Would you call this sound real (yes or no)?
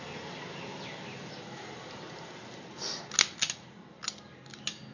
yes